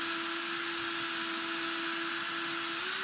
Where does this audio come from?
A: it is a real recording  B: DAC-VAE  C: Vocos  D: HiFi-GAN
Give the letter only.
A